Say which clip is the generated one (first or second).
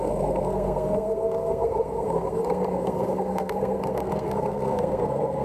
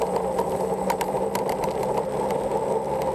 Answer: first